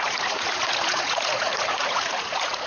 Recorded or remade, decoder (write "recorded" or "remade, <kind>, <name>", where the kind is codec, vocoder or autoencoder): remade, vocoder, Vocos